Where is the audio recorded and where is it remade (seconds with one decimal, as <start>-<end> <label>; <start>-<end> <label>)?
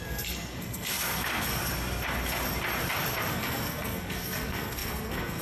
0.0-1.6 remade; 1.6-3.3 recorded; 3.3-5.4 remade